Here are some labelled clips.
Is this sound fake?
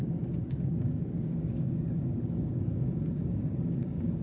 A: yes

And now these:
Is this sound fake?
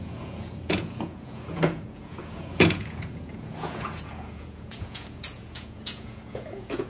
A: yes